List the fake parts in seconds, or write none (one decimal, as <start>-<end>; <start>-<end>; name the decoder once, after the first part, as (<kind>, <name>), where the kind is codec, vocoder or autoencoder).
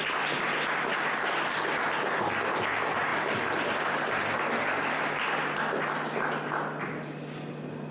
none